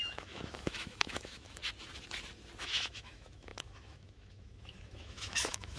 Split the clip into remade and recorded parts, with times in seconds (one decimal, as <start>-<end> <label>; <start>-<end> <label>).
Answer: 0.0-1.6 remade; 1.6-2.6 recorded; 2.6-5.8 remade